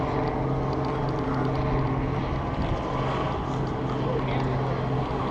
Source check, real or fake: real